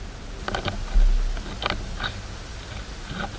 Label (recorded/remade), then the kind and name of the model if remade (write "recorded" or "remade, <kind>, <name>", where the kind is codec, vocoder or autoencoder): recorded